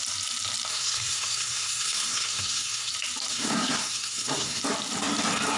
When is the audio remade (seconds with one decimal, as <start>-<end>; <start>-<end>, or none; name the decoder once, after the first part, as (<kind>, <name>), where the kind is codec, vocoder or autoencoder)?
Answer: 0.7-2.9 (codec, SNAC); 3.3-4.6